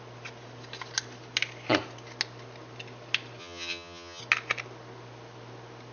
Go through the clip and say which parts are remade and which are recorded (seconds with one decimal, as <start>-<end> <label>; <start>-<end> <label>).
0.0-3.4 recorded; 3.4-4.2 remade; 4.2-5.9 recorded